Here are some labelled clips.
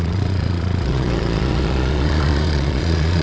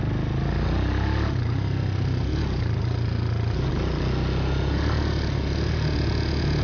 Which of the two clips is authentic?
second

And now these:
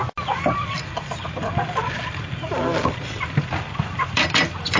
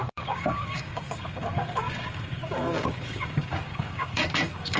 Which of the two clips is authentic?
first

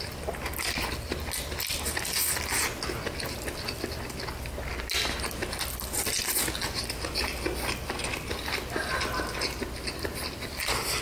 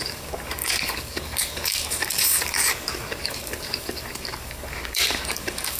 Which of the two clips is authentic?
first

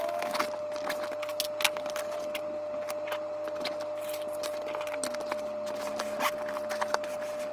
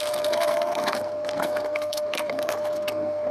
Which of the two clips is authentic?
first